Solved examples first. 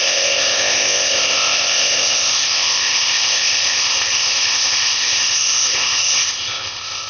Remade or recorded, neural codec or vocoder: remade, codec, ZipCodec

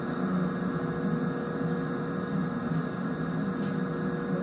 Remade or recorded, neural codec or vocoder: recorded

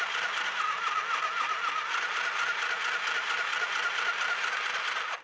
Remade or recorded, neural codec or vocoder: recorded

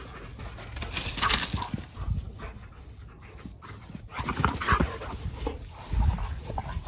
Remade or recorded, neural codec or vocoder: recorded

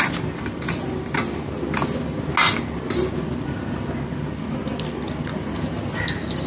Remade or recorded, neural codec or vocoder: recorded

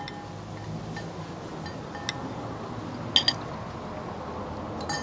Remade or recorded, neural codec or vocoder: recorded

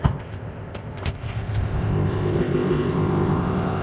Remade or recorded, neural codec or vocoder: remade, codec, ZipCodec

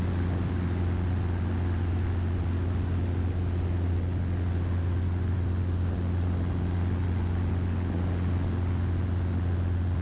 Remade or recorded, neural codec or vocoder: recorded